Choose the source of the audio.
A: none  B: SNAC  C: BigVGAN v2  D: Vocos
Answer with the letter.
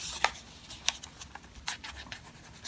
A